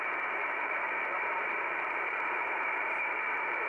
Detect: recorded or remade remade